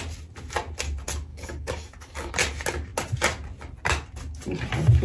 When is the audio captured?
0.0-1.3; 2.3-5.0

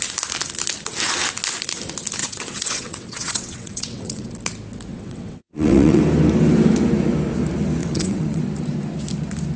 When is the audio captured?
0.0-2.2; 4.3-4.9; 6.0-7.8; 8.4-9.6

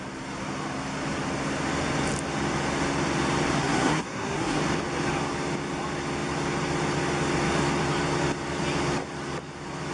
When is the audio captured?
0.0-3.6; 4.6-9.9

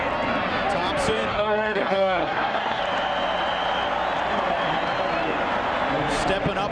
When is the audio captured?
0.0-1.3; 2.8-6.7

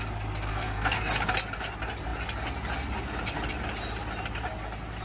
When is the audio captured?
0.0-0.5; 1.1-5.0

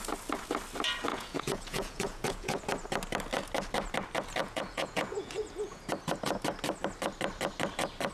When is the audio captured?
0.0-1.1; 2.6-4.4; 5.8-8.1

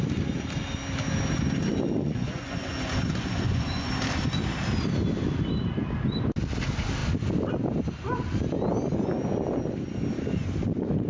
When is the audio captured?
0.0-2.0; 3.9-11.1

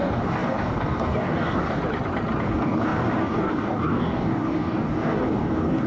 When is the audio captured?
1.8-2.4